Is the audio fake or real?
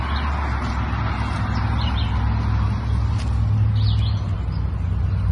real